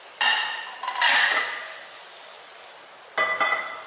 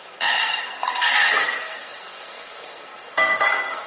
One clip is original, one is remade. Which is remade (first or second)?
second